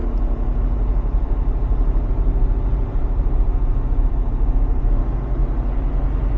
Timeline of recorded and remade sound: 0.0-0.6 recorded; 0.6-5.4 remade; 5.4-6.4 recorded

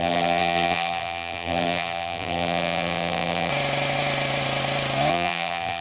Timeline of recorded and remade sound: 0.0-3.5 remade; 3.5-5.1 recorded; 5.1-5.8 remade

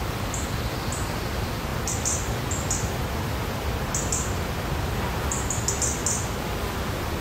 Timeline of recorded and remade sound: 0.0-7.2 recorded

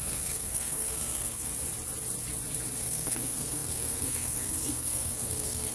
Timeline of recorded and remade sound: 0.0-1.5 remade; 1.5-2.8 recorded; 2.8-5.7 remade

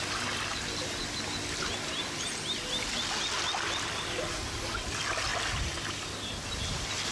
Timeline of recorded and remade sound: 0.0-7.1 recorded